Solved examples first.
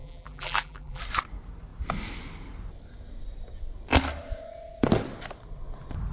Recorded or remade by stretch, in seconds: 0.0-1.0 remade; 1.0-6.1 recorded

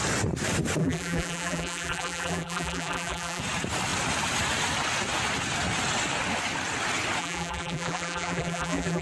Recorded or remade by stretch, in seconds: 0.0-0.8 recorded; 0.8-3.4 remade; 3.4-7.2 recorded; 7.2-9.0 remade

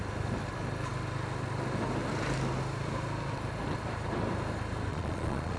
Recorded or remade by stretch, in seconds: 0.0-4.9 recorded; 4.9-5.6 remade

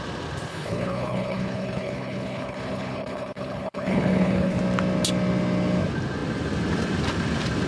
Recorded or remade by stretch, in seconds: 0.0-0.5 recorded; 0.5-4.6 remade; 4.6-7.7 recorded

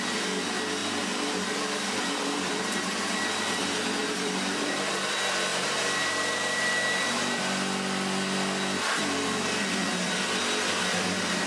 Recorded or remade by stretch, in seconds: 0.0-0.8 recorded; 0.8-3.1 remade; 3.1-4.0 recorded; 4.0-4.8 remade; 4.8-5.5 recorded; 5.5-7.2 remade; 7.2-11.5 recorded

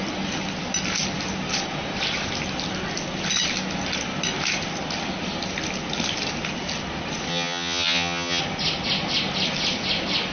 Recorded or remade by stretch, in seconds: 0.0-7.3 recorded; 7.3-8.4 remade; 8.4-10.3 recorded

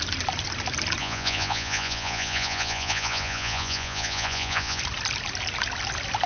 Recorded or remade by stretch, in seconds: 0.0-1.0 recorded; 1.0-4.8 remade; 4.8-6.3 recorded

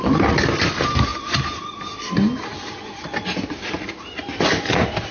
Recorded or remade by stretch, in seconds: 0.0-5.1 recorded